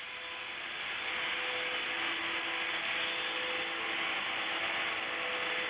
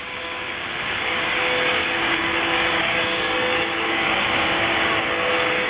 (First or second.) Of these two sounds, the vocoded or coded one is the second